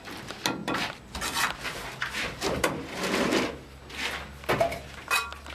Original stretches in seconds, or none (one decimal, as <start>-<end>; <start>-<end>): 0.0-5.5